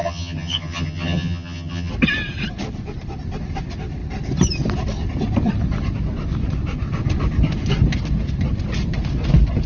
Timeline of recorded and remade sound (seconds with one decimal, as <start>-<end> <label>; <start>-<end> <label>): 0.0-1.9 remade; 1.9-9.7 recorded